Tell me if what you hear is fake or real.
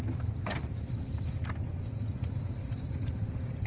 real